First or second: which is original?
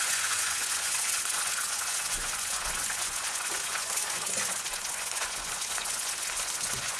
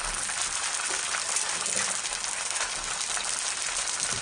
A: second